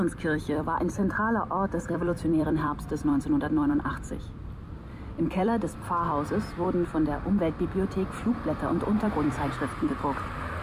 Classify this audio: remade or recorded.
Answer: remade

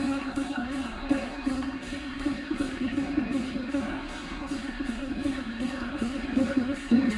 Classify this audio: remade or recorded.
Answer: remade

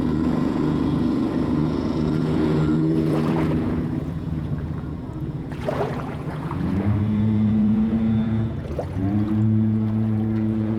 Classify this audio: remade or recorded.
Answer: remade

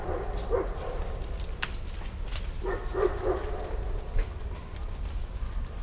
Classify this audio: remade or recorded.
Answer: recorded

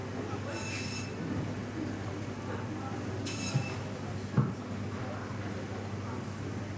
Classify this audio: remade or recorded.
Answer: recorded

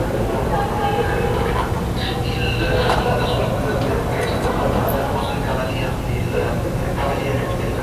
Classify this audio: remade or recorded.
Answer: recorded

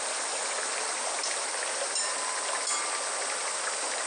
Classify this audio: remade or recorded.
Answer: recorded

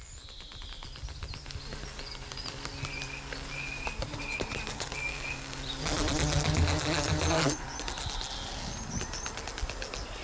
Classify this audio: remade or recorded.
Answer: recorded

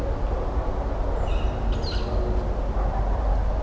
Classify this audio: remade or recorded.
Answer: recorded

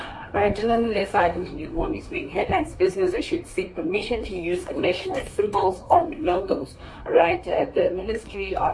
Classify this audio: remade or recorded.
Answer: remade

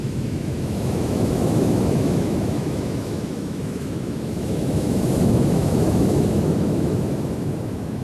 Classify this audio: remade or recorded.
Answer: remade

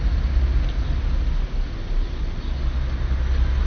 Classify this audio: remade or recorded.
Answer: recorded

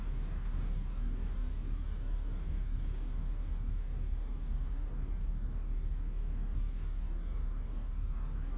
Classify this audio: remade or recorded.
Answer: remade